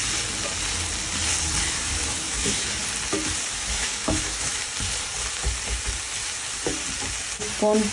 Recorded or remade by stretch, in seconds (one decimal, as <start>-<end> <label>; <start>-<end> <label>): 0.0-1.6 recorded; 1.6-2.8 remade; 2.8-3.5 recorded; 3.5-4.6 remade; 4.6-7.9 recorded